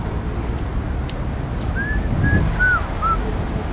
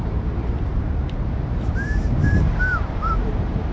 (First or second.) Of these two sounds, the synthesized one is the second